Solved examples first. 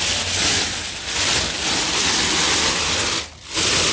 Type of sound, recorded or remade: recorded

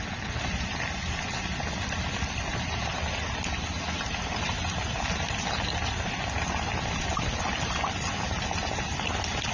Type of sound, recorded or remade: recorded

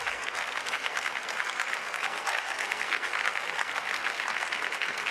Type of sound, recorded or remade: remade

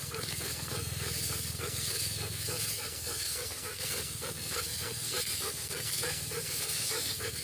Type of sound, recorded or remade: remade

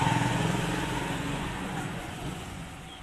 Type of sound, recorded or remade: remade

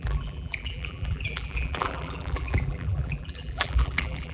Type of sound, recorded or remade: remade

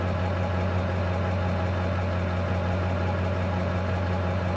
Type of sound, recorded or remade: recorded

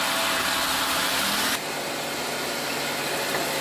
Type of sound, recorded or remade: recorded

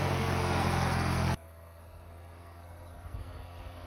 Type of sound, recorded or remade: remade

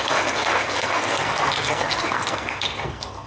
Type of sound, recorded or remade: remade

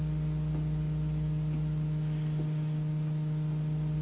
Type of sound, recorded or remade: recorded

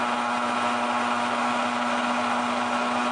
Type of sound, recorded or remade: recorded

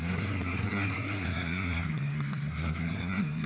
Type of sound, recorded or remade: remade